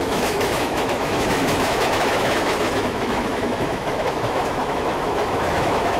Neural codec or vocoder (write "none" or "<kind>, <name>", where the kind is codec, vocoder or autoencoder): autoencoder, DAC-VAE